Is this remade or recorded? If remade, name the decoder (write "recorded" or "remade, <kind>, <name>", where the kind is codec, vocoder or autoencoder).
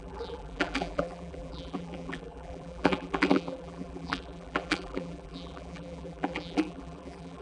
remade, vocoder, BigVGAN v2